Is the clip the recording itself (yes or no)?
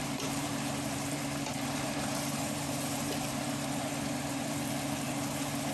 no